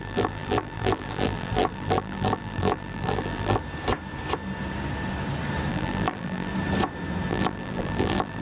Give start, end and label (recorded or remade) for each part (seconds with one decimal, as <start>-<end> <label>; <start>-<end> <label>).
0.0-3.6 remade; 3.6-5.7 recorded; 5.7-6.5 remade; 6.5-7.3 recorded; 7.3-8.4 remade

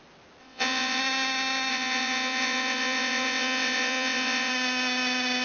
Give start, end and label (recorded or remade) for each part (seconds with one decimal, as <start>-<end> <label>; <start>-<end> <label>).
0.0-0.4 recorded; 0.4-1.0 remade; 1.0-1.7 recorded; 1.7-4.5 remade; 4.5-5.4 recorded

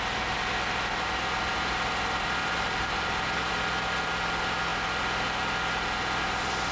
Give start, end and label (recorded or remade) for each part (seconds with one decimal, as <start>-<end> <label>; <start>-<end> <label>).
0.0-2.4 recorded; 2.4-3.5 remade; 3.5-6.7 recorded

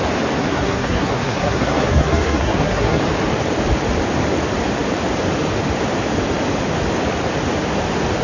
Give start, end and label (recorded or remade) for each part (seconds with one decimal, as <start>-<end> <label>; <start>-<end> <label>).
0.0-0.4 recorded; 0.4-3.0 remade; 3.0-8.2 recorded